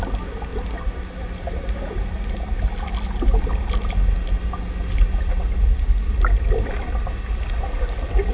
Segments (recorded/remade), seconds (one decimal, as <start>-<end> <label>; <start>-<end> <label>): 0.0-8.3 recorded